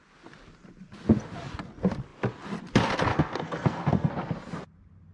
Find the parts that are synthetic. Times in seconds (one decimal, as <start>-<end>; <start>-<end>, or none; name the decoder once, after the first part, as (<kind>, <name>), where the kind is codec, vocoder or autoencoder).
3.1-4.1 (codec, SNAC)